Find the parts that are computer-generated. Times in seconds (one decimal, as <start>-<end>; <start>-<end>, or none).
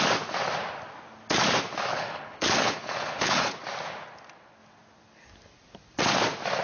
1.9-3.5